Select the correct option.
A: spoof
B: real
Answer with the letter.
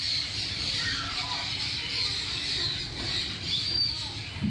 A